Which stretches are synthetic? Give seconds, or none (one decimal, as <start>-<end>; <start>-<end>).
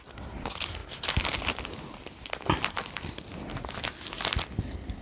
none